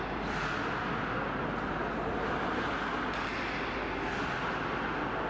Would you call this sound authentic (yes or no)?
yes